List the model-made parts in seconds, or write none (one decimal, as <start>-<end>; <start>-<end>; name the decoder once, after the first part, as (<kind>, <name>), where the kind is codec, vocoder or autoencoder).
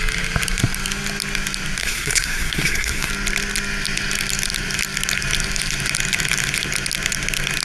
1.8-3.1 (codec, SNAC)